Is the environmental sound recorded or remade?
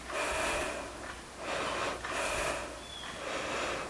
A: recorded